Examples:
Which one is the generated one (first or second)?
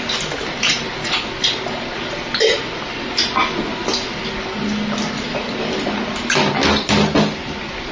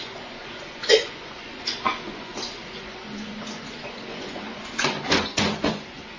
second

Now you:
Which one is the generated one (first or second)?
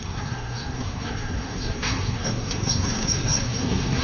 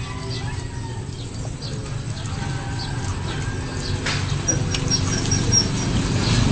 first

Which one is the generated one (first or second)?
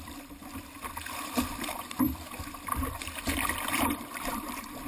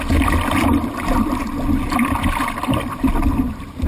first